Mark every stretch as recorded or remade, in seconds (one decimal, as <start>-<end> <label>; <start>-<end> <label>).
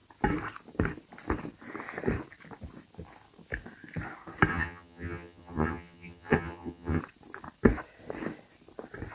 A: 0.0-4.5 recorded; 4.5-7.0 remade; 7.0-9.1 recorded